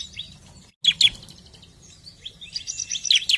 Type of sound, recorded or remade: recorded